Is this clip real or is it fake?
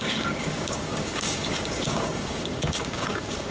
fake